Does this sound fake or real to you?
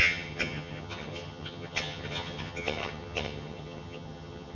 fake